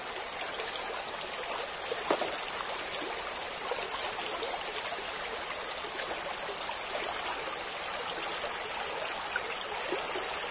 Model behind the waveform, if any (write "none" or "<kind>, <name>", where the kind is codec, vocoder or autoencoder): none